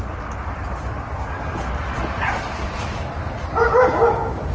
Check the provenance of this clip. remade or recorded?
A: recorded